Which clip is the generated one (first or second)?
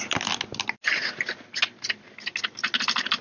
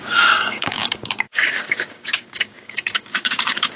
second